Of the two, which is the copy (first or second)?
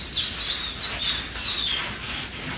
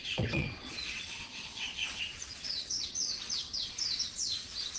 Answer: second